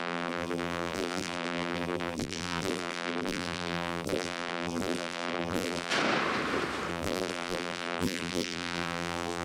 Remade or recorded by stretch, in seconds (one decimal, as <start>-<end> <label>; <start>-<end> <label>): 0.0-5.9 remade; 5.9-6.9 recorded; 6.9-9.4 remade